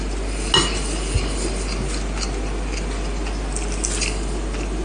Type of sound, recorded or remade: recorded